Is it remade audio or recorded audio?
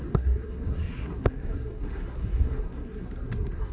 remade